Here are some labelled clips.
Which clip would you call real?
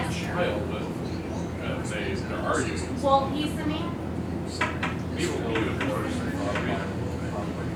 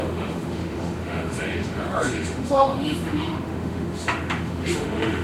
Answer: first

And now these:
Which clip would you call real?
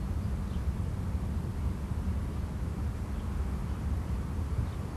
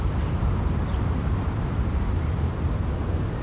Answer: first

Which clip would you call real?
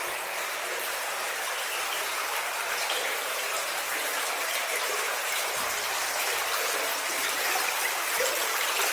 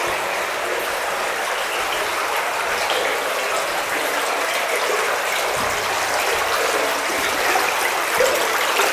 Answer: second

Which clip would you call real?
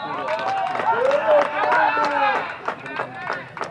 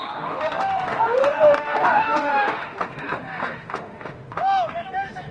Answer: first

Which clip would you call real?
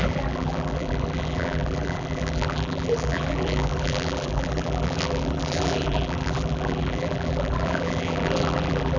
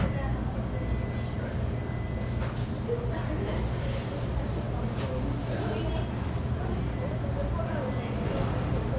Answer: second